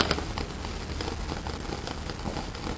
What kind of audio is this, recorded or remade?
recorded